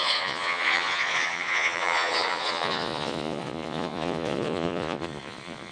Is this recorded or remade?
remade